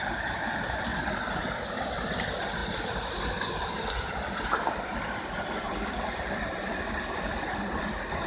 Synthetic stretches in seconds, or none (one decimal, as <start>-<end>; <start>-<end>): 0.0-0.9; 1.4-2.6; 4.0-8.3